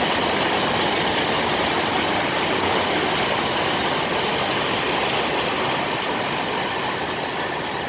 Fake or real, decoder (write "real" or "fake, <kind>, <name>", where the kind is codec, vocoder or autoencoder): real